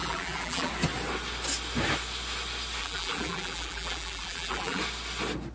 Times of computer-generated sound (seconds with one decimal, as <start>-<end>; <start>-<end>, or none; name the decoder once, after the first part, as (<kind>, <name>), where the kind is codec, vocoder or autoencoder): 0.0-0.7 (vocoder, BigVGAN v2); 2.8-4.8